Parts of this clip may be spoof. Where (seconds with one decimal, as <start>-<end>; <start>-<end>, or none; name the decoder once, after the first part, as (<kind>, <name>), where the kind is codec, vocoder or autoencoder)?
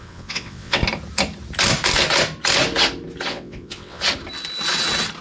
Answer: 0.0-0.8 (vocoder, WaveNeXt); 3.3-4.0